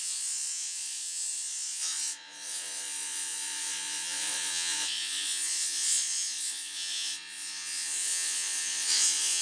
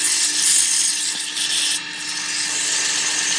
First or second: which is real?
second